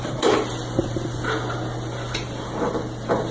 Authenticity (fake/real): real